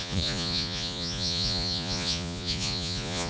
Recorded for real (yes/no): no